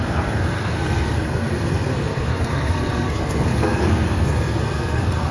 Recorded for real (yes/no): no